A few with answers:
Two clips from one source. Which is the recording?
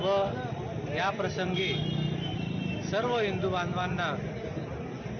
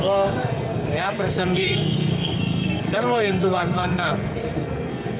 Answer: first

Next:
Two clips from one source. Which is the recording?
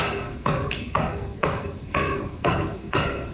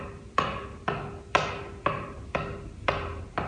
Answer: second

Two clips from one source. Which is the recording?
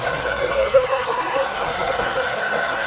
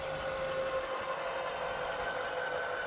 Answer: second